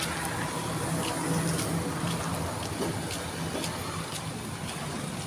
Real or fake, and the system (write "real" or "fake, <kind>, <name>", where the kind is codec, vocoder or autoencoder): real